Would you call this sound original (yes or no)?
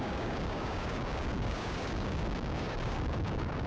no